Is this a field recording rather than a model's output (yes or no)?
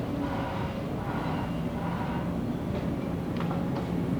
yes